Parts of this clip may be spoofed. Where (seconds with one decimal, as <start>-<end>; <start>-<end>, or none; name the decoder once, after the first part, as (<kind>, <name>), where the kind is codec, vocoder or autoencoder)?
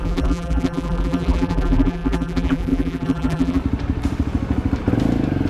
0.0-3.6 (vocoder, BigVGAN v2)